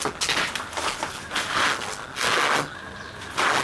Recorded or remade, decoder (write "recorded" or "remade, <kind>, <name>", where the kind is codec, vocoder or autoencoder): recorded